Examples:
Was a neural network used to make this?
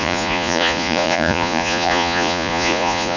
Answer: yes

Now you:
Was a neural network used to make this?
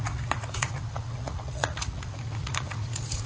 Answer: yes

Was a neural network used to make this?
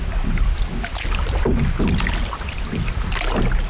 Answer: no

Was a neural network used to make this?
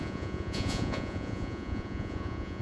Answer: yes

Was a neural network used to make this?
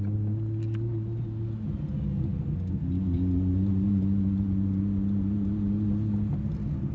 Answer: no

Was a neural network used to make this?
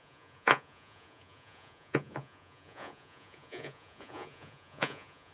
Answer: yes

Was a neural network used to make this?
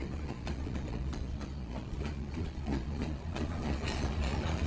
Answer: yes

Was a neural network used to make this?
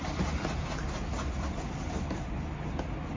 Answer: no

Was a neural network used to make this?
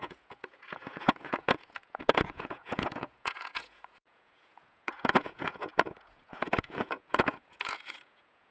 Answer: yes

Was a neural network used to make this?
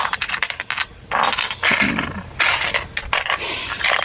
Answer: no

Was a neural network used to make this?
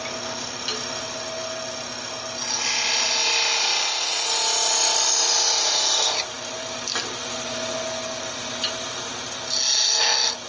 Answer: no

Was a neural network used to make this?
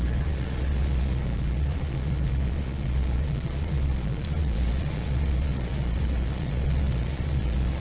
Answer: yes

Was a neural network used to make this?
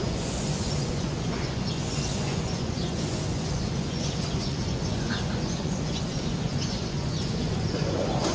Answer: yes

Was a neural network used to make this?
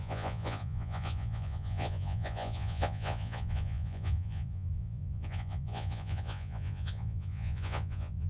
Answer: yes